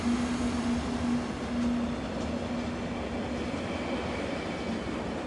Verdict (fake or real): real